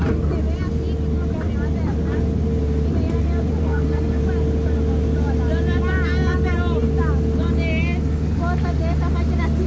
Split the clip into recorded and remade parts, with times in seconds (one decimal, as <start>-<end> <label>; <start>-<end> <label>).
0.0-3.6 recorded; 3.6-4.2 remade; 4.2-9.7 recorded